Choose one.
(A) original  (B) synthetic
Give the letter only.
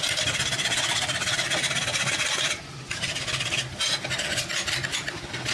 B